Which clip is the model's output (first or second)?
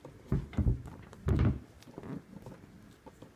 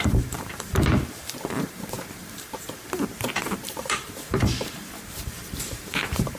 second